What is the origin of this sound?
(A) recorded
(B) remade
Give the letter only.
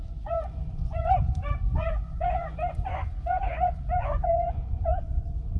B